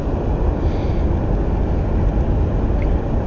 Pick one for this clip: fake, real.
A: real